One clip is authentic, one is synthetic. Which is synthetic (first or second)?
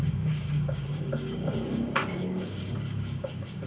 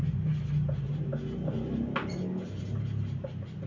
first